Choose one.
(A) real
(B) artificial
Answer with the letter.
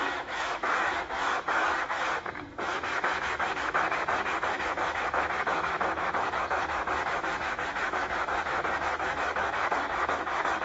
B